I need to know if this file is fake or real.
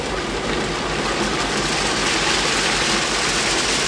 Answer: real